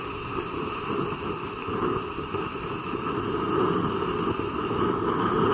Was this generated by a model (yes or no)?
no